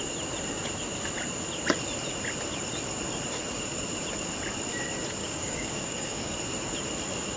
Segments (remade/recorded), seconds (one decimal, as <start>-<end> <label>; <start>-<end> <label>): 0.0-5.2 recorded; 5.2-6.3 remade; 6.3-7.4 recorded